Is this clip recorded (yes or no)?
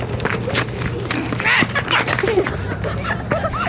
yes